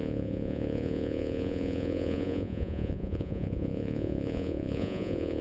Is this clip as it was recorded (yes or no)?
no